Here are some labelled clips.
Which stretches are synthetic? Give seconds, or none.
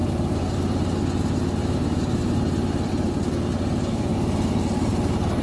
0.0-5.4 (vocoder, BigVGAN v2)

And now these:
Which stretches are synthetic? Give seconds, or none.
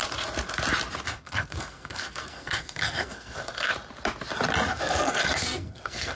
1.1-3.7 (codec, SNAC); 4.7-6.1